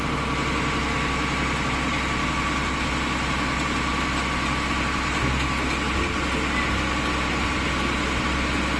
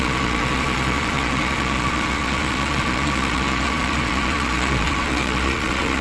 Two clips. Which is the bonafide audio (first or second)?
first